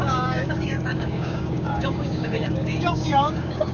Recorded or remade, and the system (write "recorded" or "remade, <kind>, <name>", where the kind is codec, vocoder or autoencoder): remade, codec, DAC